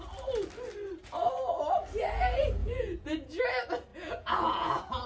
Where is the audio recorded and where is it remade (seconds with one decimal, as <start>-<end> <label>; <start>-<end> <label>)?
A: 0.0-2.6 recorded; 2.6-3.4 remade; 3.4-3.9 recorded; 3.9-5.1 remade